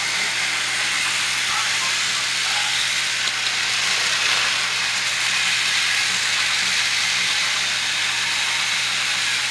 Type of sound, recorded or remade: recorded